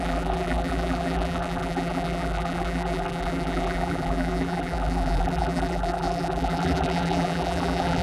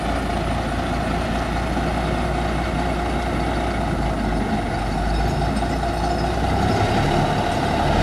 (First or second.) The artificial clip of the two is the first